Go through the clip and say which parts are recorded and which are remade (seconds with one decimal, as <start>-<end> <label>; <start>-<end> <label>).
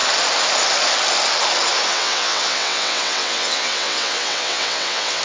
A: 0.0-1.9 recorded; 1.9-5.2 remade